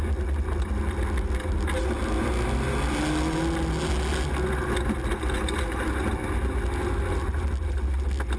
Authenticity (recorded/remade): recorded